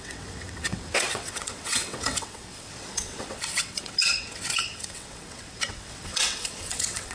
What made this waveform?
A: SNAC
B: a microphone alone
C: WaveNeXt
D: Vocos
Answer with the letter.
C